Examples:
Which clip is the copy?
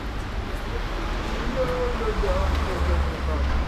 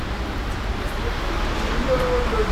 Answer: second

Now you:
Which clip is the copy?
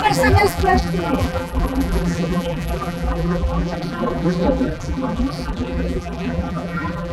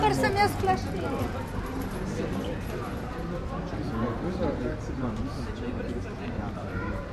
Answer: first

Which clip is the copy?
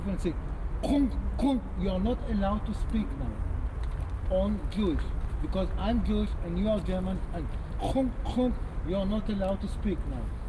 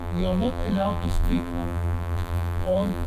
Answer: second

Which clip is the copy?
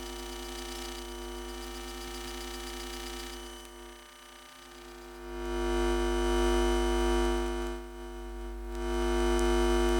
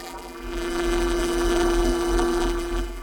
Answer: second